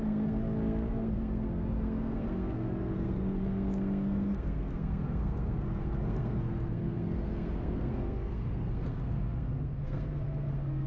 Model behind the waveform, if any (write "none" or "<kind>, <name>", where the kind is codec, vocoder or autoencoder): codec, SNAC